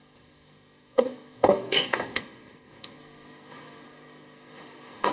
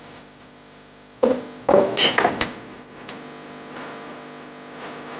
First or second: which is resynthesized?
first